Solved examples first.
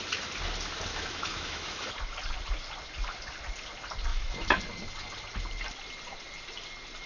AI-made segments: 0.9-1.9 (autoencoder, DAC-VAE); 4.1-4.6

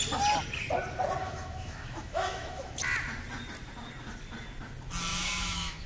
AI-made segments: 1.2-2.8 (autoencoder, DAC-VAE); 5.1-5.9

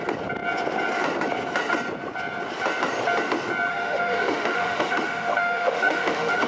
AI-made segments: 3.7-6.5 (autoencoder, DAC-VAE)

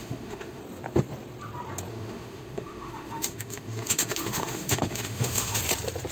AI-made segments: 0.0-0.6 (autoencoder, DAC-VAE); 1.9-5.6